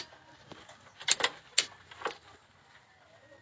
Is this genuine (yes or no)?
yes